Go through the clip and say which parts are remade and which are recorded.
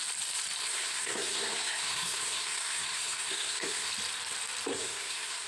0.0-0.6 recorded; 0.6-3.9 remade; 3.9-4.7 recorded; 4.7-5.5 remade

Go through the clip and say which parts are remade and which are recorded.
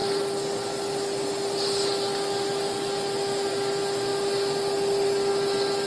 0.0-5.9 recorded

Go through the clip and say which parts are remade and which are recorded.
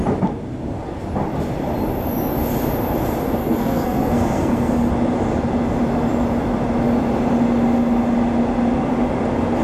0.0-3.4 recorded; 3.4-4.9 remade; 4.9-9.6 recorded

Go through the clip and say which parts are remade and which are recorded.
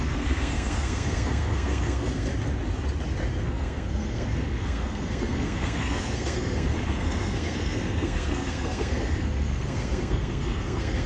0.0-2.3 remade; 2.3-3.4 recorded; 3.4-11.1 remade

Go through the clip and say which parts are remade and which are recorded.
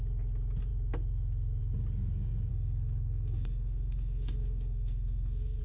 0.0-2.5 recorded; 2.5-5.6 remade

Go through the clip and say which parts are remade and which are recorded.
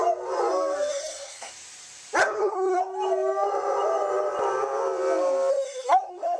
0.0-0.9 recorded; 0.9-1.5 remade; 1.5-2.2 recorded; 2.2-2.8 remade; 2.8-5.5 recorded; 5.5-6.4 remade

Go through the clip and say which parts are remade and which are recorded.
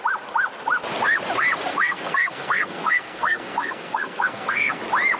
0.0-1.7 recorded; 1.7-4.8 remade; 4.8-5.2 recorded